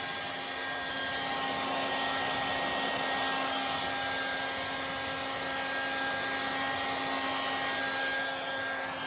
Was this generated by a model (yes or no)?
no